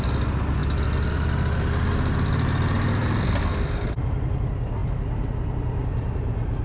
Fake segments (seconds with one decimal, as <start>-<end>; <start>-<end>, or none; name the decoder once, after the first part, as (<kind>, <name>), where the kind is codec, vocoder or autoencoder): none